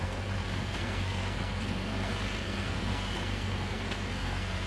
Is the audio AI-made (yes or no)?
yes